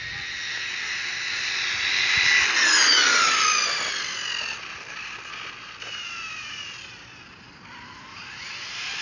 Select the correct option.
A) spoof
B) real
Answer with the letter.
B